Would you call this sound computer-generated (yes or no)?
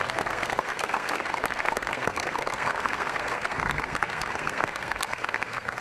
yes